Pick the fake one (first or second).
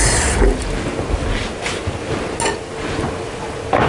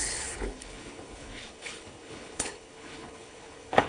second